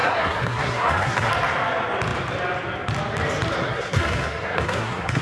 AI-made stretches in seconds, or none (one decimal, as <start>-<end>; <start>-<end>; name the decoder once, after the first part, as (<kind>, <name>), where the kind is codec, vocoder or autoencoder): 0.0-1.3 (codec, SNAC); 3.6-5.2